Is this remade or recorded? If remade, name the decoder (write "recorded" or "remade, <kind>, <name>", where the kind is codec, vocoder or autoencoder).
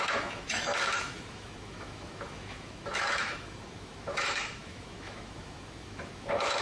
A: remade, autoencoder, DAC-VAE